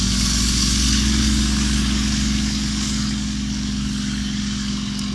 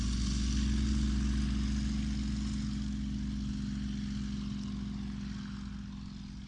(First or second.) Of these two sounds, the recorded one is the second